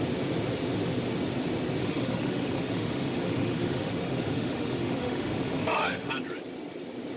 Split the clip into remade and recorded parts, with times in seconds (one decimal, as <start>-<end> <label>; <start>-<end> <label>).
0.0-1.8 recorded; 1.8-6.1 remade; 6.1-7.2 recorded